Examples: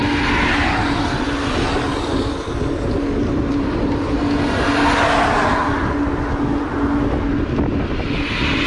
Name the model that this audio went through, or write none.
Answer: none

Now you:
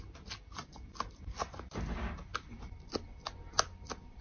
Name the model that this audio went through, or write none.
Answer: none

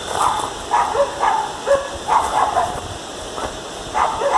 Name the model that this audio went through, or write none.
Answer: none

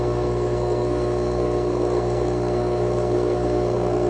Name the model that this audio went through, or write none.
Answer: codec, SNAC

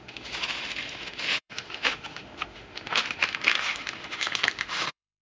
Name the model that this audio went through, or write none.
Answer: autoencoder, DAC-VAE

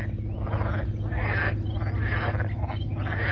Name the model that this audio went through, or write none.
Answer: none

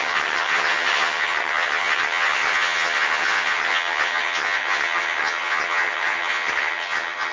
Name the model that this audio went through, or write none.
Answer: vocoder, HiFi-GAN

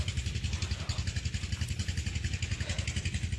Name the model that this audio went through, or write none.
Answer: none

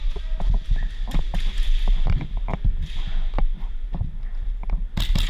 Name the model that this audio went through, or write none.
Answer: none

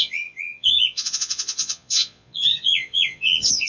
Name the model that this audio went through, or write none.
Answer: vocoder, Vocos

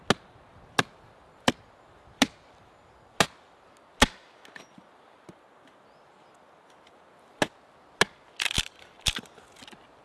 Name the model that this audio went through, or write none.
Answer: none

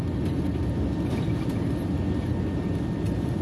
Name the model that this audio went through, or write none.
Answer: none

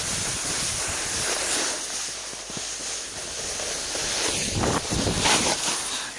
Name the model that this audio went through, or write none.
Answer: none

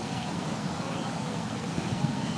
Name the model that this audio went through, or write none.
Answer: codec, SNAC